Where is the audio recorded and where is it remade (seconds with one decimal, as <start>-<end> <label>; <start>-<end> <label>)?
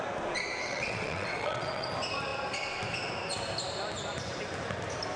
0.0-0.6 recorded; 0.6-1.9 remade; 1.9-5.2 recorded